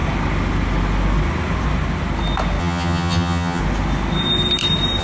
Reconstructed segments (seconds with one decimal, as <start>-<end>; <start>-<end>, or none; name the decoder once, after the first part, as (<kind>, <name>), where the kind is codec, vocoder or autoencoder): 2.6-3.6 (vocoder, HiFi-GAN)